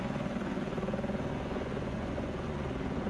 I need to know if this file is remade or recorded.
remade